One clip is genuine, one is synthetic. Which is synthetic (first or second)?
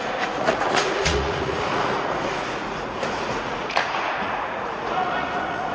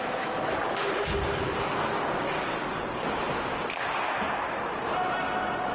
first